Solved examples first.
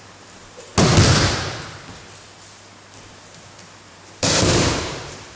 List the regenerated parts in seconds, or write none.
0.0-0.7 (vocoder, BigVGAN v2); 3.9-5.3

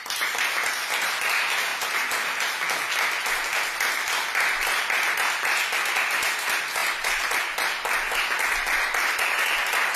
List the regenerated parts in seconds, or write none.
none

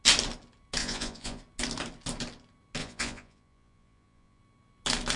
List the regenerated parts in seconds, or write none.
0.8-1.4 (vocoder, Vocos); 2.8-4.4

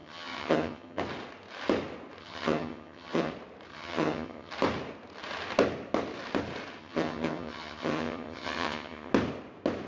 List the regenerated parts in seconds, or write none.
0.0-1.0 (vocoder, HiFi-GAN); 2.2-3.3; 3.7-4.5; 6.8-9.1